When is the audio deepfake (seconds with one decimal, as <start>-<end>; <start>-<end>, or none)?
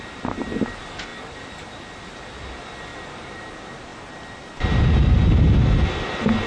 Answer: 2.9-3.5